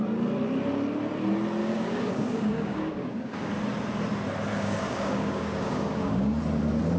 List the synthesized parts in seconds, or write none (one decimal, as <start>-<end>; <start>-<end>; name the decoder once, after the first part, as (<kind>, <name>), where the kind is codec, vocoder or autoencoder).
1.6-3.5 (codec, DAC); 4.5-6.4